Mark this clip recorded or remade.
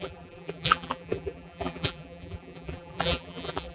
remade